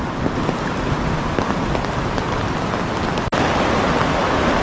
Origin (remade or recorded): recorded